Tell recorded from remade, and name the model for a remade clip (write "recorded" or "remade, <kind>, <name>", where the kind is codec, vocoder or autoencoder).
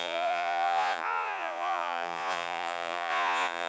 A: remade, vocoder, Vocos